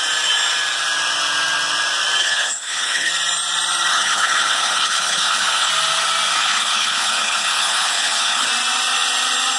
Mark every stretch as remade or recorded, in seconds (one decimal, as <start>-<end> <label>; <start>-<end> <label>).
0.0-2.2 recorded; 2.2-3.1 remade; 3.1-3.9 recorded; 3.9-5.7 remade; 5.7-6.3 recorded; 6.3-8.5 remade; 8.5-9.6 recorded

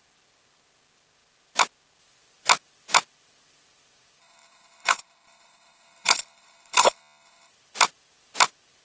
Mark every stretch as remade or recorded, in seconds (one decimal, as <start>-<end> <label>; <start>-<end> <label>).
0.0-4.2 recorded; 4.2-7.5 remade; 7.5-8.8 recorded

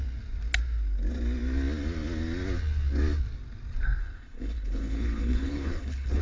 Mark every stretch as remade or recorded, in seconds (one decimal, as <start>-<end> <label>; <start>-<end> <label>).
0.0-4.0 recorded; 4.0-6.2 remade